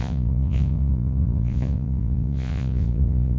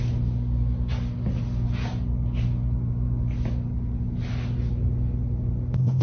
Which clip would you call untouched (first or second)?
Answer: second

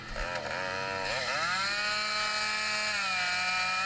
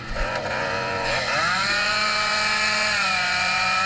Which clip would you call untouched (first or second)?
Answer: first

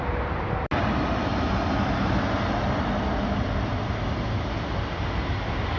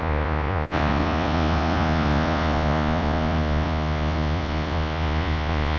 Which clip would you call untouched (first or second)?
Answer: first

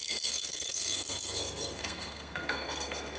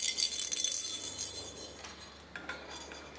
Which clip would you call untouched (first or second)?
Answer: second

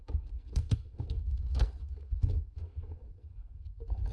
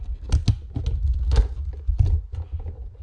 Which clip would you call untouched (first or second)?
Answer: second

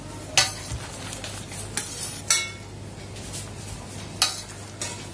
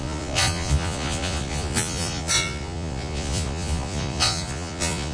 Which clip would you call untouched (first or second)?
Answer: first